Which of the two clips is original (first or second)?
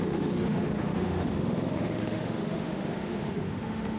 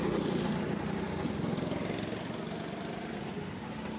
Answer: second